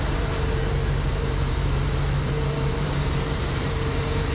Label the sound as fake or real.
fake